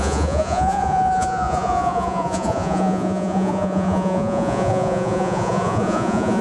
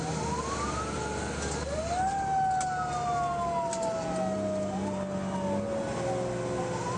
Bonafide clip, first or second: second